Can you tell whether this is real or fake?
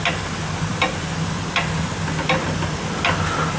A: real